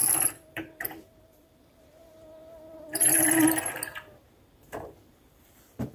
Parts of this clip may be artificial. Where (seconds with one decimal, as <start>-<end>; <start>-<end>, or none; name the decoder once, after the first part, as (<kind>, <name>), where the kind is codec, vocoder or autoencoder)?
0.0-3.4 (vocoder, BigVGAN v2); 5.1-5.9

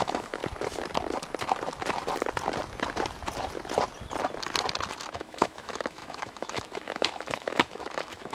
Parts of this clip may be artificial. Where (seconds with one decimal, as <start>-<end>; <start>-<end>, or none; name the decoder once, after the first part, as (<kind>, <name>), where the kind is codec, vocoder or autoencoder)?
0.0-0.4 (autoencoder, DAC-VAE); 5.1-8.3

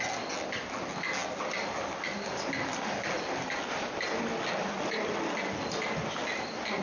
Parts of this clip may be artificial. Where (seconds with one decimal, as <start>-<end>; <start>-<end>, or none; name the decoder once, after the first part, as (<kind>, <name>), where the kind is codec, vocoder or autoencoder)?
none